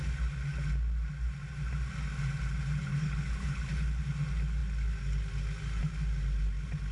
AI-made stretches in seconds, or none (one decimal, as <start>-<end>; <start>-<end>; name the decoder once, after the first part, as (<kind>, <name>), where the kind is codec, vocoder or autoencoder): 2.9-4.0 (codec, HILCodec)